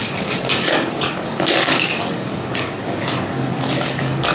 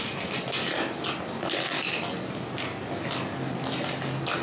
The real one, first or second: second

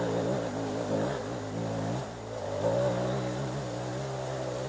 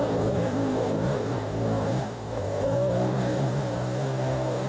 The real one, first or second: first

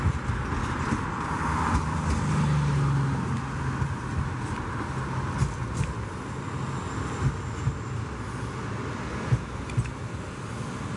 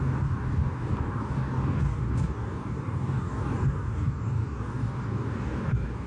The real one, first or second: first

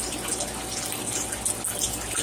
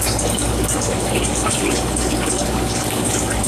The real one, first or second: first